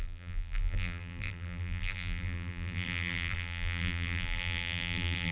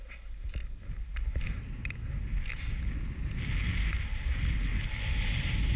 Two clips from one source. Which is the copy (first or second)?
first